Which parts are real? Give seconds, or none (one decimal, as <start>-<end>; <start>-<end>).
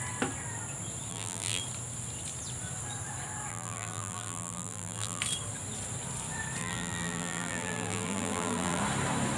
0.0-1.1; 1.6-3.5; 5.2-6.6; 8.8-9.4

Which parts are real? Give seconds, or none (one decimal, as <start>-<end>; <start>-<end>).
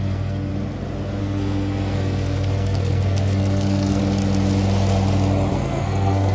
0.5-1.2; 4.0-5.5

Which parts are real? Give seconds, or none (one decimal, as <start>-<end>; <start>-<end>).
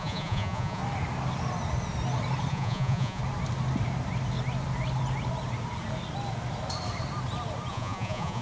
0.8-2.5; 3.2-7.7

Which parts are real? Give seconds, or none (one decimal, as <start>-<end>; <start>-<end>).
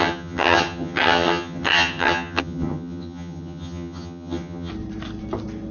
4.7-5.7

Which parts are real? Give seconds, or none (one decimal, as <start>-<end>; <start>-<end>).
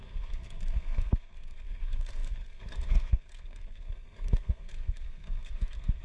none